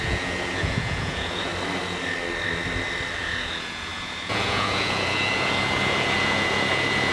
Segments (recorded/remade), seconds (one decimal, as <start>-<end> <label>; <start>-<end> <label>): 0.0-1.5 remade; 1.5-3.2 recorded; 3.2-7.1 remade